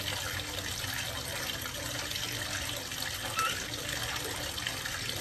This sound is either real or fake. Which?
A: real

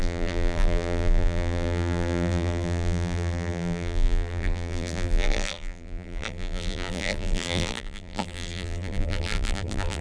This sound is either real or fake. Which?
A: fake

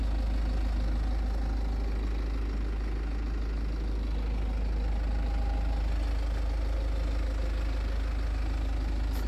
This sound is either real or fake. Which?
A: real